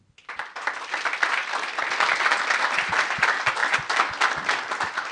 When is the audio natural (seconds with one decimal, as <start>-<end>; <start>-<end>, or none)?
1.4-2.2; 3.6-4.5